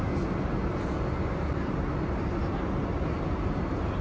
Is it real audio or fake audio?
real